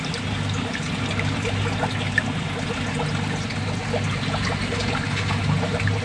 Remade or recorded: recorded